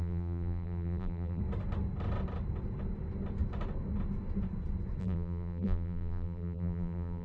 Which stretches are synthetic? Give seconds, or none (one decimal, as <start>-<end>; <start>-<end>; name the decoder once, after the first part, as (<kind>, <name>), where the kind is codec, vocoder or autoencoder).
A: 0.0-1.4 (vocoder, BigVGAN v2); 5.0-7.2